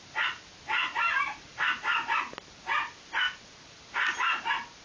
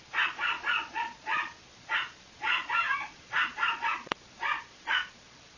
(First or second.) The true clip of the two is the first